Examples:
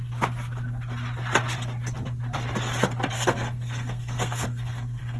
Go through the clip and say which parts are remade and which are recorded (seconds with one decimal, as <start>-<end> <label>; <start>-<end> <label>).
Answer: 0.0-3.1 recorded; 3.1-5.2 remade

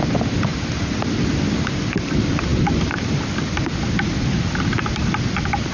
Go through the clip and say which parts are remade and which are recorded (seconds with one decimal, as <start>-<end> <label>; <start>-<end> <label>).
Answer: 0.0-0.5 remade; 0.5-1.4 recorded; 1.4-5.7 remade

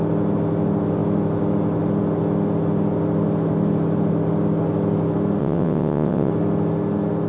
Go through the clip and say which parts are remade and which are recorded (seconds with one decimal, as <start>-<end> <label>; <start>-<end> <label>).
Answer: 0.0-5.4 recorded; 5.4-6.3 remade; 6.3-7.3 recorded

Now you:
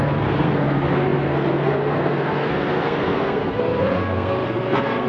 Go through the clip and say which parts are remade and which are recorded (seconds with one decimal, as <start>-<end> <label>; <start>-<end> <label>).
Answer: 0.0-5.1 remade

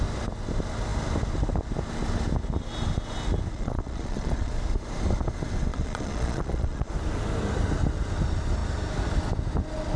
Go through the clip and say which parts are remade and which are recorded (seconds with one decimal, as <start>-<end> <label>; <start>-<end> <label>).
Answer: 0.0-3.5 recorded; 3.5-4.5 remade; 4.5-5.7 recorded; 5.7-6.9 remade; 6.9-10.0 recorded